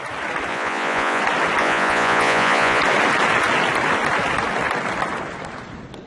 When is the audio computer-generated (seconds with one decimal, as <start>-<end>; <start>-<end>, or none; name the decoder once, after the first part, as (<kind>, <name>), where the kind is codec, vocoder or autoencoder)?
0.5-1.2 (vocoder, Vocos); 1.6-2.8